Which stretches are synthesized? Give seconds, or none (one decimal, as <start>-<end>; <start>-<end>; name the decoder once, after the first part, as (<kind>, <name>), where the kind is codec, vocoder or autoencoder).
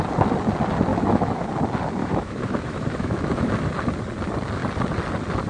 0.9-1.5 (autoencoder, DAC-VAE); 2.0-3.5